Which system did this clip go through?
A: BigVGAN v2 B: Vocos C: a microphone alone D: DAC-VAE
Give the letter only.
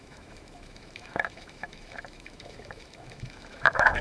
D